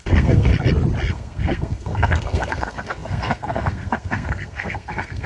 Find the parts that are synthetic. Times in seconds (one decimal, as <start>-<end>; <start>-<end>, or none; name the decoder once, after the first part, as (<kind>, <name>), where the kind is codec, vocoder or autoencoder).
0.0-0.5 (codec, SNAC); 1.1-5.3